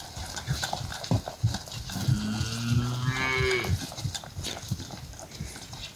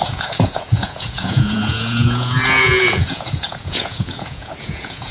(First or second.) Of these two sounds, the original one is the first